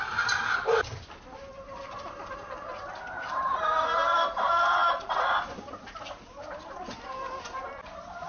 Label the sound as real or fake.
real